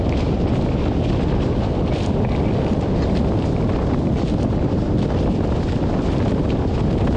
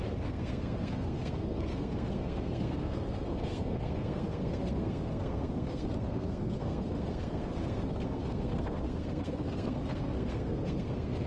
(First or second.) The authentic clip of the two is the first